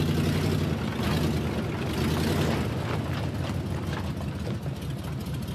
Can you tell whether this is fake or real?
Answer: real